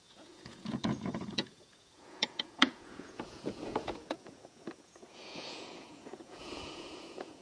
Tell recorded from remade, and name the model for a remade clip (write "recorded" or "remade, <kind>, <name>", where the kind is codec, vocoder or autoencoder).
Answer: remade, vocoder, Vocos